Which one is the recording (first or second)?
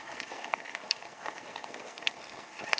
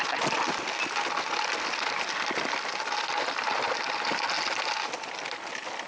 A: second